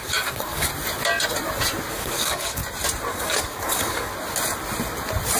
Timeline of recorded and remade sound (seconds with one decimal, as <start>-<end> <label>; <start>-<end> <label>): 0.0-0.7 remade; 0.7-1.9 recorded; 1.9-2.6 remade; 2.6-3.1 recorded; 3.1-4.1 remade; 4.1-5.4 recorded